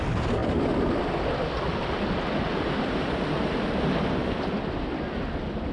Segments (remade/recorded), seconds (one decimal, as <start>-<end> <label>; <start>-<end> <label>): 0.0-5.7 recorded